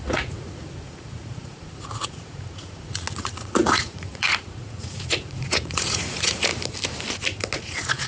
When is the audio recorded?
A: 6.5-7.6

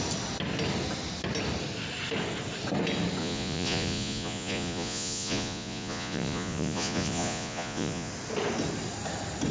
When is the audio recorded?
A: 0.0-3.2; 8.1-9.5

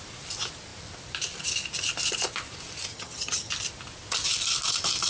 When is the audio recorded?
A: 0.0-2.9; 3.5-5.1

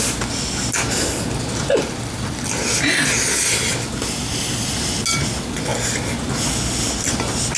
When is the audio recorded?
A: 0.0-7.6

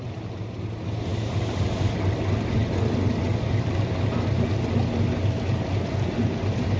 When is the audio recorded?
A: 0.0-6.8

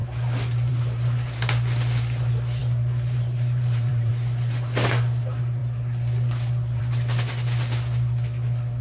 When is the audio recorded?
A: 0.0-2.6; 4.1-8.8

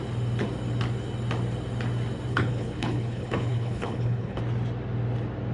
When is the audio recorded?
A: 0.0-2.3; 4.4-5.5